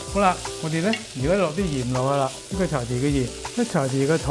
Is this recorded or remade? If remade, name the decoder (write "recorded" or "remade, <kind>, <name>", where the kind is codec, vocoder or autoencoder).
recorded